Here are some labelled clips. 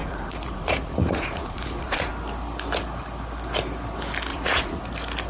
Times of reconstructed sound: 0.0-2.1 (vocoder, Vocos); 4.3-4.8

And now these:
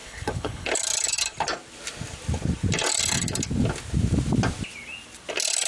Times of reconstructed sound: 0.0-0.7 (codec, HILCodec)